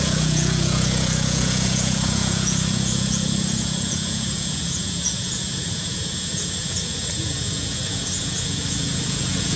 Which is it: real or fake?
fake